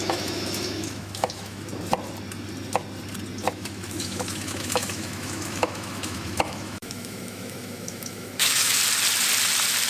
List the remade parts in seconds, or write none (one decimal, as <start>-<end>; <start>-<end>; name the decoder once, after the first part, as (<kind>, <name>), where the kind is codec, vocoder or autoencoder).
0.0-1.7 (autoencoder, DAC-VAE); 3.5-8.8